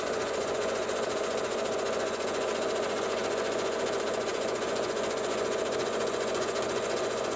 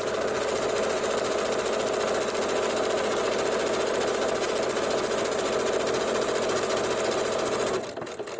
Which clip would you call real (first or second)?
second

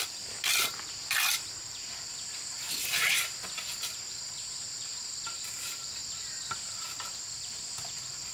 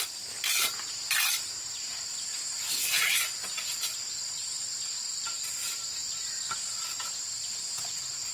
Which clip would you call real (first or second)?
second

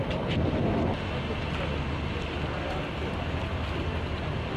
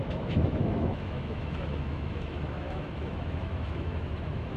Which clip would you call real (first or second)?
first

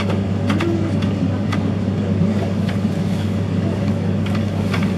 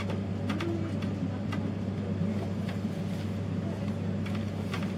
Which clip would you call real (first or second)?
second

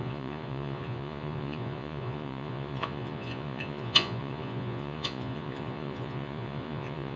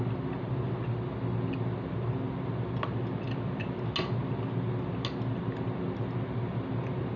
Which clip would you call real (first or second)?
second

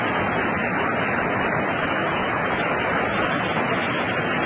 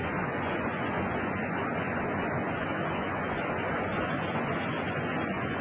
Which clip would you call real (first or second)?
first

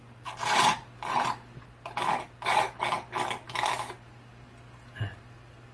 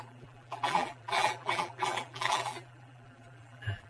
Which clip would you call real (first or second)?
first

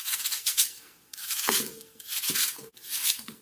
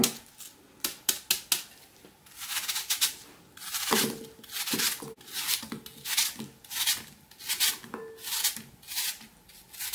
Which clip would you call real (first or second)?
second